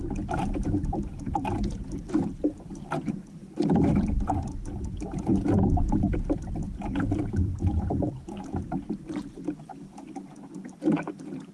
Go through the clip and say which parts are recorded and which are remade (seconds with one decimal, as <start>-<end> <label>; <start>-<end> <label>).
0.0-9.7 remade; 9.7-11.1 recorded; 11.1-11.5 remade